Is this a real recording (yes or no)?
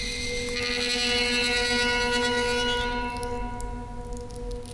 yes